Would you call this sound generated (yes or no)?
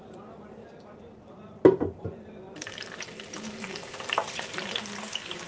yes